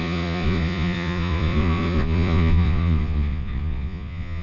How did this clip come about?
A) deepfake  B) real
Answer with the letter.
A